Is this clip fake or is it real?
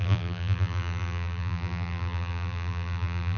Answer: fake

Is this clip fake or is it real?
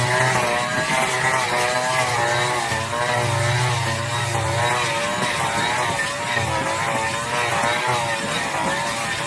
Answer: real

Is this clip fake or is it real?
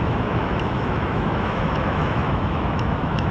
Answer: fake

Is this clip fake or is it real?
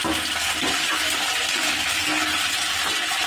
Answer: fake